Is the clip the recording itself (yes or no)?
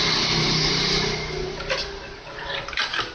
yes